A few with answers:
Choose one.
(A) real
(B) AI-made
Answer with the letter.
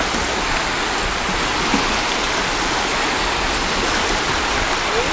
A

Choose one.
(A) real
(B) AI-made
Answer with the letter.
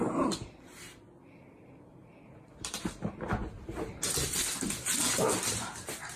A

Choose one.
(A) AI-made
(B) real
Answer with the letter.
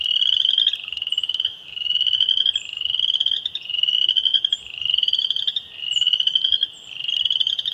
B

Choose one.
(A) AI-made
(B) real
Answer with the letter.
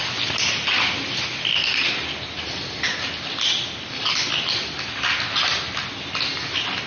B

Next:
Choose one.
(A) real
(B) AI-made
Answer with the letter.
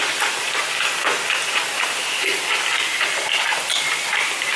A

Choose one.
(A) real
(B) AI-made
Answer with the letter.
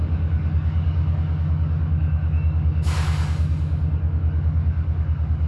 B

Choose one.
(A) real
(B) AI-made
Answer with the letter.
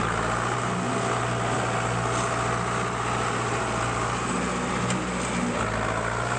A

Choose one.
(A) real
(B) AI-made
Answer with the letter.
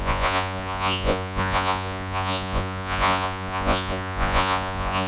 B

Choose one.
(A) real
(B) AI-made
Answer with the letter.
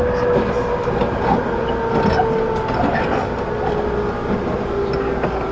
A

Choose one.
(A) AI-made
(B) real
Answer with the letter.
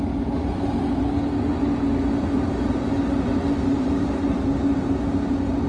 B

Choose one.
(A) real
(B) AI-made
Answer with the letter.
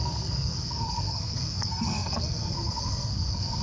B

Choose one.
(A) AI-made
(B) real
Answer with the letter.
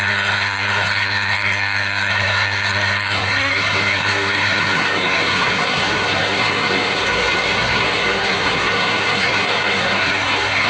A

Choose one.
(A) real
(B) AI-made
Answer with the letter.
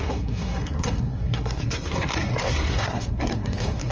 B